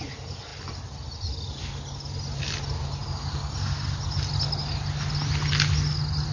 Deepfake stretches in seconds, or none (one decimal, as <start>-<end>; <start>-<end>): none